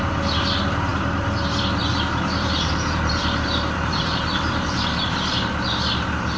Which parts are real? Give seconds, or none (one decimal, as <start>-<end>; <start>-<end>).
0.0-0.9; 1.4-1.9; 5.7-6.4